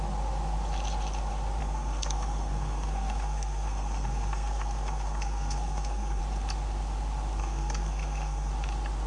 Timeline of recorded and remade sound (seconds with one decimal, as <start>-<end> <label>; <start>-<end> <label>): 0.0-1.6 recorded; 1.6-6.2 remade; 6.2-7.4 recorded; 7.4-8.5 remade; 8.5-9.1 recorded